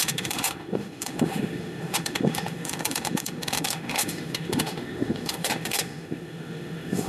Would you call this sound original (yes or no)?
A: no